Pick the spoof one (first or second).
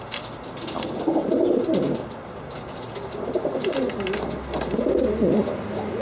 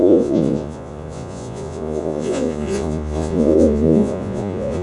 second